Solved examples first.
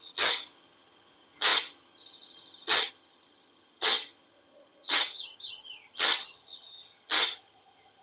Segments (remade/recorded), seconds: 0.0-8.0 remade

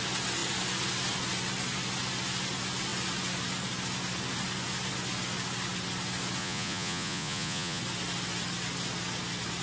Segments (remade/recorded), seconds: 0.0-6.4 recorded; 6.4-7.8 remade; 7.8-9.6 recorded

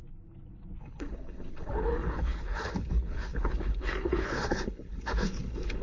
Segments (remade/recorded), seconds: 0.0-0.8 recorded; 0.8-5.8 remade

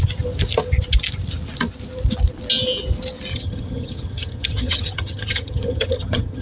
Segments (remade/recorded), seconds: 0.0-3.3 recorded; 3.3-6.4 remade

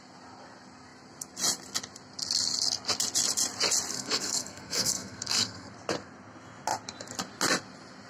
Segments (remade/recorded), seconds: 0.0-3.9 recorded; 3.9-5.7 remade; 5.7-8.1 recorded

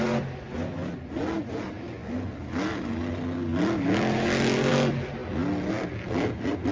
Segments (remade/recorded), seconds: 0.0-6.7 recorded

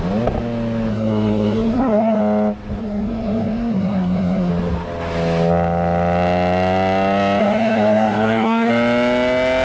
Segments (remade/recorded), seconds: 0.0-0.9 recorded; 0.9-2.2 remade; 2.2-2.8 recorded; 2.8-4.5 remade; 4.5-7.4 recorded; 7.4-8.7 remade; 8.7-9.6 recorded

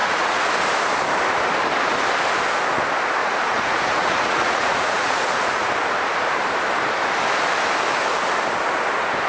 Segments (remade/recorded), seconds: 0.0-0.5 remade; 0.5-3.2 recorded; 3.2-5.7 remade; 5.7-9.3 recorded